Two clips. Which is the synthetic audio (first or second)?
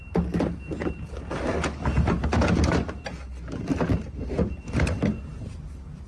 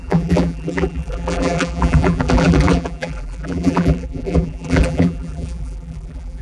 second